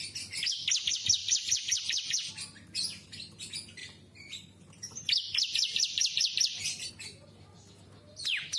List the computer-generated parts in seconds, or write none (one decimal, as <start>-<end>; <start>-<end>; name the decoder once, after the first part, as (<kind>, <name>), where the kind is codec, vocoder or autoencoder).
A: 1.2-2.3 (vocoder, BigVGAN v2); 3.8-6.9